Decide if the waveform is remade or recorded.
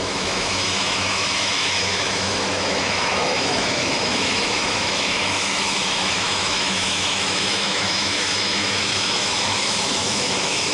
remade